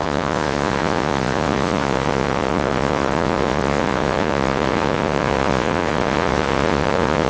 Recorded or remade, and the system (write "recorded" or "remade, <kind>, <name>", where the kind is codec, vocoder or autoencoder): remade, vocoder, Vocos